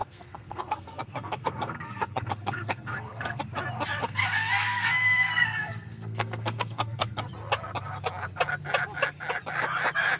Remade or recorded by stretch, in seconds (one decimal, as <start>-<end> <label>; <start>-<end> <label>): 0.0-3.4 remade; 3.4-4.0 recorded; 4.0-7.3 remade; 7.3-10.2 recorded